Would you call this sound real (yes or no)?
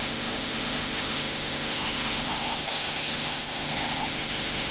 no